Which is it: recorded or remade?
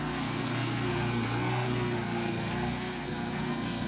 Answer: remade